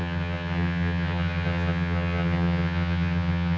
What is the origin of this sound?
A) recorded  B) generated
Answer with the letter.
B